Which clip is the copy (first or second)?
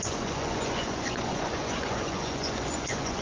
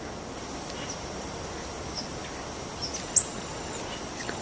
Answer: first